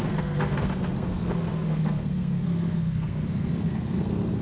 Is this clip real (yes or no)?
no